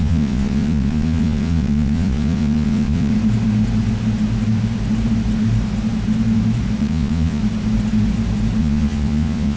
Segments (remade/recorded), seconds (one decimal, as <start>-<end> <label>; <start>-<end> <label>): 0.0-3.1 remade; 3.1-6.8 recorded; 6.8-7.4 remade; 7.4-8.6 recorded; 8.6-9.6 remade